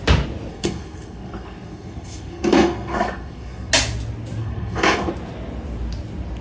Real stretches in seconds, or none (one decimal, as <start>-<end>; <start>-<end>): 0.0-0.5; 3.7-4.4; 5.1-6.4